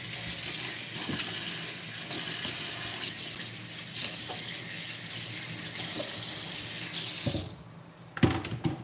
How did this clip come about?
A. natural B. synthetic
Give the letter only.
A